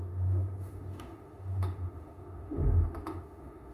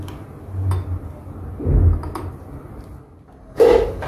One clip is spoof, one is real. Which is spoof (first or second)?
first